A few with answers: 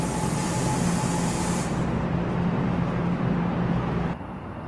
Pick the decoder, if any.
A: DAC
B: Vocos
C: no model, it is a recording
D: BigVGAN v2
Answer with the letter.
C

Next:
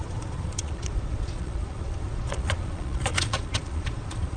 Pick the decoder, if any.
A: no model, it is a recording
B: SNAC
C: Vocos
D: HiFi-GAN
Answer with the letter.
C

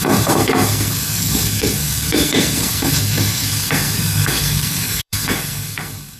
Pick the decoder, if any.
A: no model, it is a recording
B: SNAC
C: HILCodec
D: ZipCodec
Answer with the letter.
B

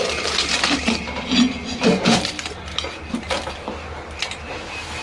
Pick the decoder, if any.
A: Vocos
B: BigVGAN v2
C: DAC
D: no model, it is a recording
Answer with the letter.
D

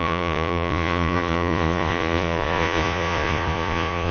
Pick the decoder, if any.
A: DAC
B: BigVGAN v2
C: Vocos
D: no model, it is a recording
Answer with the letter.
C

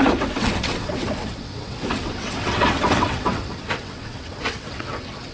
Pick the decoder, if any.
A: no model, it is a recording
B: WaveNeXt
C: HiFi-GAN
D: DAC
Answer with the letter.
B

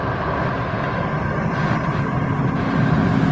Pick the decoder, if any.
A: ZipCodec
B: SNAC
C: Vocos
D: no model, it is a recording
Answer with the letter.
D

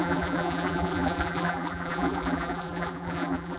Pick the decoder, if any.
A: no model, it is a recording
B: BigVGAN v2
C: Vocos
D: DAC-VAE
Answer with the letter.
B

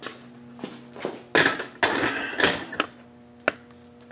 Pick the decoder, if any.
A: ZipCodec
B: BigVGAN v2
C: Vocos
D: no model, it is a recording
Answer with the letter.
D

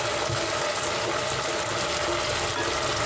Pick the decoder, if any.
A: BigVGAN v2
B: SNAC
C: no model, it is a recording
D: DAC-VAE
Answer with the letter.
C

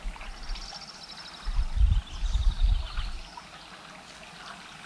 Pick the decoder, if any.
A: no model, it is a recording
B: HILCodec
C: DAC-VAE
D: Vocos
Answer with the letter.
A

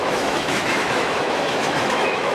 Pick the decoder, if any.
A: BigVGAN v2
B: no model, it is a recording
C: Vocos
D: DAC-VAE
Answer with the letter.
D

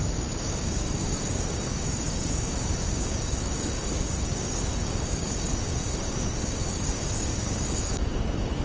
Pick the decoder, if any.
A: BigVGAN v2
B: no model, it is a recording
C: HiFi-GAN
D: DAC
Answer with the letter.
D